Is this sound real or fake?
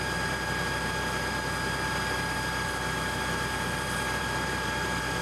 real